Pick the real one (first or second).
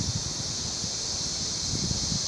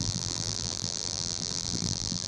first